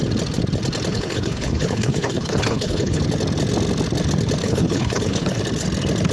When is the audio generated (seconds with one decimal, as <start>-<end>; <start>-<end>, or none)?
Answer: 0.9-3.0; 4.4-5.4